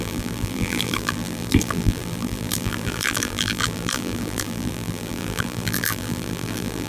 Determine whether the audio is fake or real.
fake